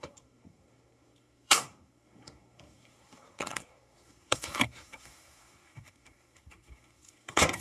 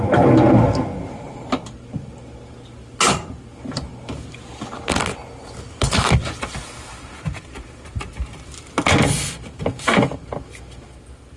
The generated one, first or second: first